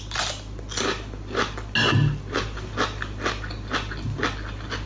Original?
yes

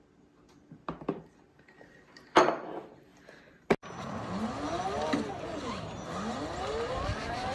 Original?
yes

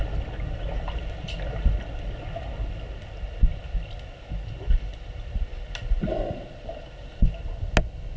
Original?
yes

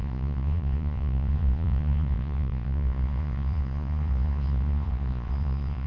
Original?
no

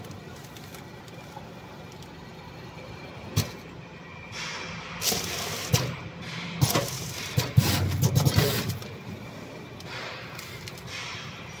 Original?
yes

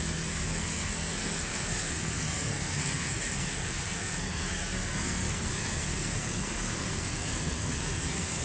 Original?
no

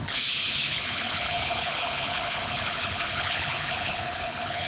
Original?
no